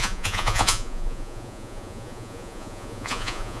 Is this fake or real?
fake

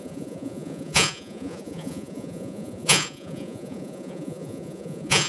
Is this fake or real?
fake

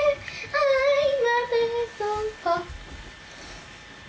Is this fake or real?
real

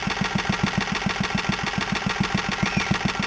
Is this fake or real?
real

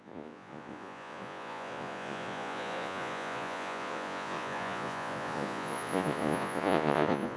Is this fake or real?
fake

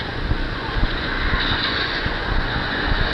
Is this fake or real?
fake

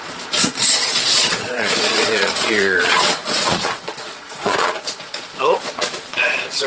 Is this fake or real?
fake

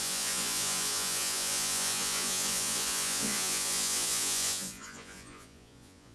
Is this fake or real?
fake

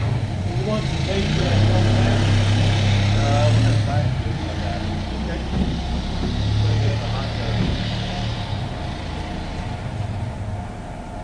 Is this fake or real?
real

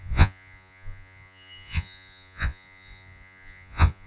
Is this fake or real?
fake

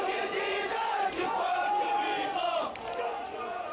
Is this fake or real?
fake